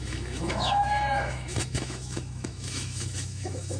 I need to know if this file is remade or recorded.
remade